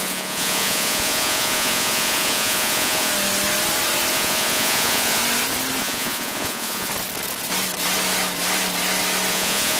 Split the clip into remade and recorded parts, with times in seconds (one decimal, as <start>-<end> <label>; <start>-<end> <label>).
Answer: 0.0-3.1 remade; 3.1-4.1 recorded; 4.1-5.2 remade; 5.2-5.8 recorded; 5.8-6.9 remade; 6.9-9.3 recorded; 9.3-9.8 remade